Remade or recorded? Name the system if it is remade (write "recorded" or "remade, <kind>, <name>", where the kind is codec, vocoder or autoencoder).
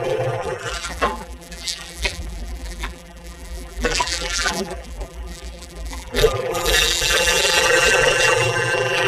remade, vocoder, BigVGAN v2